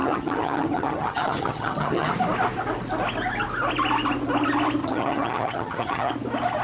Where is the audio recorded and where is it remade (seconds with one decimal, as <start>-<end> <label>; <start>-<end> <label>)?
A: 0.0-2.1 remade; 2.1-4.8 recorded; 4.8-6.1 remade; 6.1-6.6 recorded